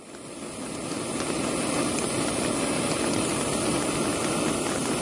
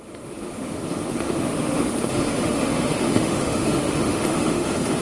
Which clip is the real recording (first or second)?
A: first